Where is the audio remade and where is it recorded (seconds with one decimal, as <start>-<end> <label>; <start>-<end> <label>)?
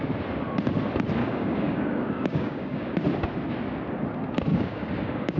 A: 0.0-1.2 recorded; 1.2-2.9 remade; 2.9-4.5 recorded; 4.5-5.4 remade